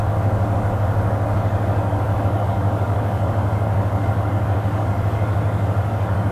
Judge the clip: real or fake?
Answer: fake